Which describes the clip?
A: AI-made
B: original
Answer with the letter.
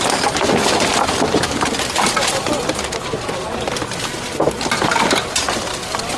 B